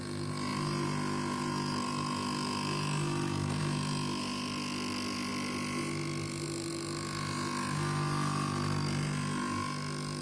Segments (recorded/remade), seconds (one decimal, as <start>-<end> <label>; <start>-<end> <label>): 0.0-10.2 recorded

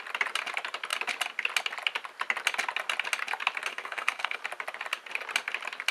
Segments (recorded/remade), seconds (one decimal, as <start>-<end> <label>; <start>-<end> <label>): 0.0-3.7 recorded; 3.7-4.4 remade; 4.4-5.9 recorded

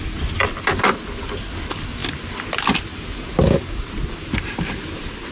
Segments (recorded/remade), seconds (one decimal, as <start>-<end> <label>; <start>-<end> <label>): 0.0-5.3 recorded

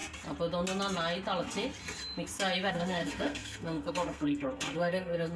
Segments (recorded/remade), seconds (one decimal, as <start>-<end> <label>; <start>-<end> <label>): 0.0-2.7 recorded; 2.7-5.4 remade

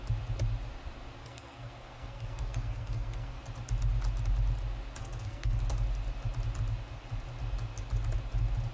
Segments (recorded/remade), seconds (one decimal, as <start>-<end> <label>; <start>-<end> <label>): 0.0-1.2 recorded; 1.2-3.4 remade; 3.4-5.0 recorded; 5.0-5.6 remade; 5.6-8.7 recorded

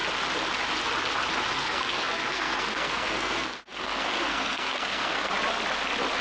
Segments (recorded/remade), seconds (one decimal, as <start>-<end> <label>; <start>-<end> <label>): 0.0-1.6 recorded; 1.6-5.3 remade; 5.3-6.2 recorded

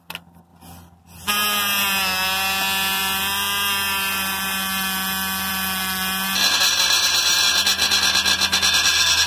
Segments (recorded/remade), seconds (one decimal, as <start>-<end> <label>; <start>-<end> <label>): 0.0-9.3 recorded

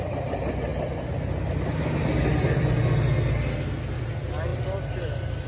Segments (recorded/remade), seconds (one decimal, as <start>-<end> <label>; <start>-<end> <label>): 0.0-5.5 recorded